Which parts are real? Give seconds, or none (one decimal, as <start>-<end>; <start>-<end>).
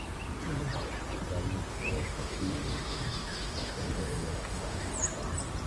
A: 0.0-1.7; 4.9-5.7